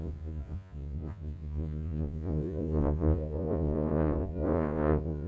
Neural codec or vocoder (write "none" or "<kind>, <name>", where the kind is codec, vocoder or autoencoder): vocoder, Vocos